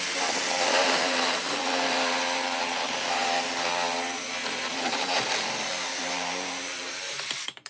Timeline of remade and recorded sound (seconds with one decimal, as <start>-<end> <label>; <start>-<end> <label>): 0.0-7.7 remade